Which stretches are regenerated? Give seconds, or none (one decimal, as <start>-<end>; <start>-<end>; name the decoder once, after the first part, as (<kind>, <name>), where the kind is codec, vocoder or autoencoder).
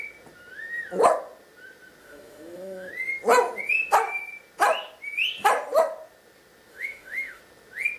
2.0-2.9 (autoencoder, DAC-VAE); 6.7-7.4